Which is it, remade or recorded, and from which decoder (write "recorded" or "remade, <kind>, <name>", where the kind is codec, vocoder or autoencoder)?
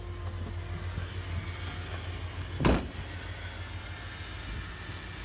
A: recorded